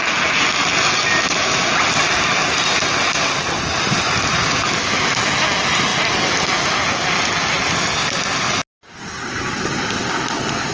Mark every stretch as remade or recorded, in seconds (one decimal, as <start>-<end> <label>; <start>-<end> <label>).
0.0-10.7 recorded